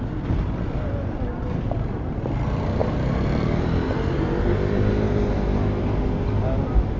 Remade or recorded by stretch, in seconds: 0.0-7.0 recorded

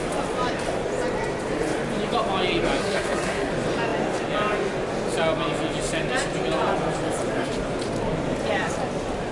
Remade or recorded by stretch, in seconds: 0.0-2.8 recorded; 2.8-3.5 remade; 3.5-9.3 recorded

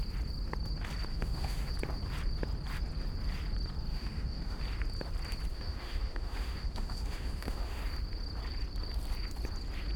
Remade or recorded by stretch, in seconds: 0.0-1.1 recorded; 1.1-1.7 remade; 1.7-3.9 recorded; 3.9-4.6 remade; 4.6-5.5 recorded; 5.5-7.8 remade; 7.8-10.0 recorded

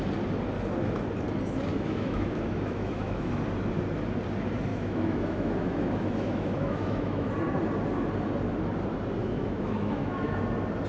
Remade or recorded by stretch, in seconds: 0.0-1.7 recorded; 1.7-3.3 remade; 3.3-4.7 recorded; 4.7-7.3 remade; 7.3-9.2 recorded; 9.2-10.4 remade; 10.4-10.9 recorded

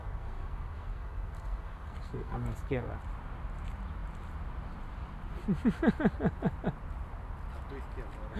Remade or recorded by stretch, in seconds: 0.0-2.9 remade; 2.9-8.4 recorded